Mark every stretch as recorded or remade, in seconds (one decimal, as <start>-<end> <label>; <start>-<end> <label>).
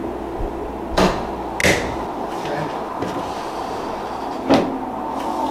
0.0-5.5 recorded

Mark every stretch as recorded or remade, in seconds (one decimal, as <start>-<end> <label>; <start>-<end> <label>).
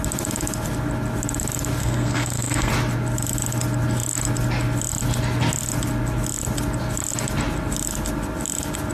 0.0-1.8 recorded; 1.8-2.7 remade; 2.7-8.9 recorded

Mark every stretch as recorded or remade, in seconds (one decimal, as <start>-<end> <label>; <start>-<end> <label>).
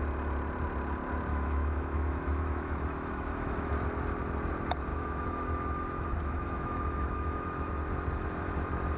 0.0-1.3 recorded; 1.3-3.7 remade; 3.7-4.9 recorded; 4.9-7.7 remade; 7.7-9.0 recorded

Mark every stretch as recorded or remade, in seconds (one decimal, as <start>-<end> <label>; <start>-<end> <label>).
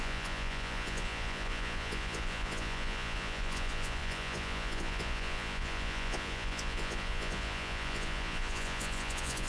0.0-9.5 remade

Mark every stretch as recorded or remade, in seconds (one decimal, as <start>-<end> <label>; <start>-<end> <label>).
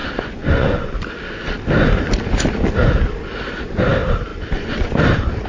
0.0-0.9 remade; 0.9-4.3 recorded; 4.3-4.9 remade; 4.9-5.5 recorded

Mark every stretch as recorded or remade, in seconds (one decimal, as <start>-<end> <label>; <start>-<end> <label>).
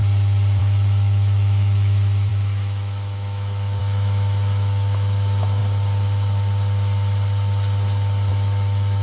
0.0-0.6 recorded; 0.6-5.6 remade; 5.6-8.3 recorded; 8.3-9.0 remade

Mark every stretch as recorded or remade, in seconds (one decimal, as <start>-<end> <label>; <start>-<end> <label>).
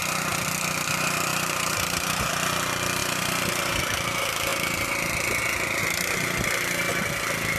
0.0-1.3 recorded; 1.3-2.3 remade; 2.3-3.0 recorded; 3.0-3.8 remade; 3.8-7.6 recorded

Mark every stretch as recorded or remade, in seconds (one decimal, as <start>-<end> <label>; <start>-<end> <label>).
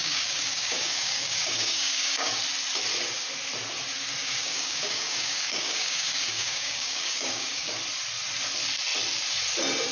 0.0-2.3 remade; 2.3-4.2 recorded; 4.2-7.7 remade; 7.7-9.9 recorded